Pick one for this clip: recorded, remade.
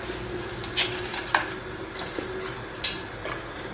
recorded